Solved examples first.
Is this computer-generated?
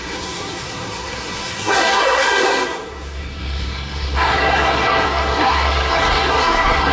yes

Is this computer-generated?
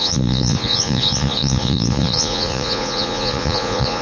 yes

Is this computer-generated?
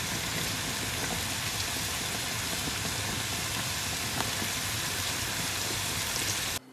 no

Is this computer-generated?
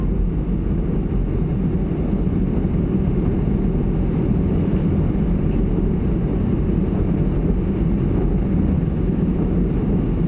no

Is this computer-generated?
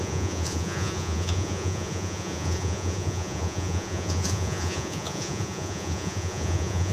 yes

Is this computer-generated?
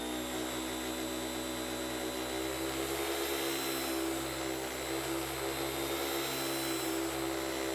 no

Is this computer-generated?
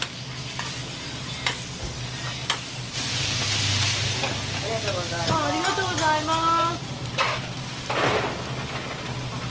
no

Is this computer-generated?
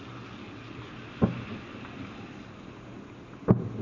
no